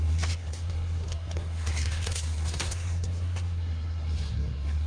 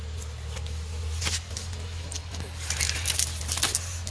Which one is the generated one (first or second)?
first